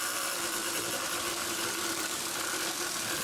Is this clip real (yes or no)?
yes